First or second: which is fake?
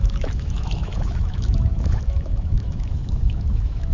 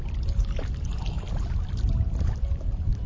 first